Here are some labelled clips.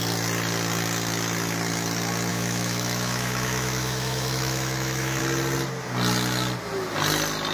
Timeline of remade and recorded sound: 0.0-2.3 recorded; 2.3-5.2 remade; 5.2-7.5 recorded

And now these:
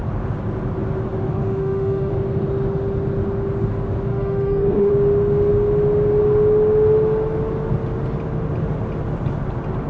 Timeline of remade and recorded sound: 0.0-1.3 recorded; 1.3-2.1 remade; 2.1-4.1 recorded; 4.1-4.9 remade; 4.9-9.9 recorded

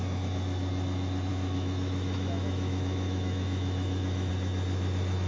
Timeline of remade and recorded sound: 0.0-1.3 recorded; 1.3-4.3 remade; 4.3-5.3 recorded

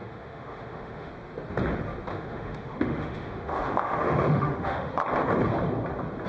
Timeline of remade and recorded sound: 0.0-1.1 remade; 1.1-2.1 recorded; 2.1-4.9 remade; 4.9-6.3 recorded